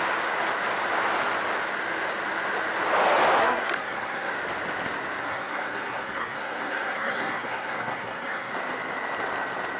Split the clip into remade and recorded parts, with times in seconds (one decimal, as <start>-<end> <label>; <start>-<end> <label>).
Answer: 0.0-3.4 recorded; 3.4-4.3 remade; 4.3-5.2 recorded; 5.2-8.5 remade; 8.5-9.8 recorded